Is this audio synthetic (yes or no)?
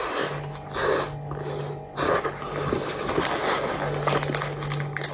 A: no